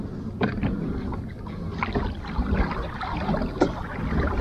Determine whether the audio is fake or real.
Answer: real